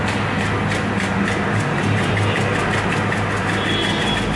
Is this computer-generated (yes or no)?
no